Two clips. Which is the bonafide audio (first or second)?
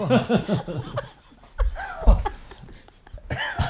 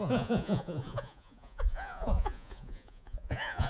first